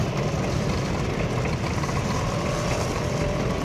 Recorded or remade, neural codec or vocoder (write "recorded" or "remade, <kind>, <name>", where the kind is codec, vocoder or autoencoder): recorded